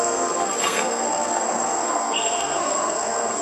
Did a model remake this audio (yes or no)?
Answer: yes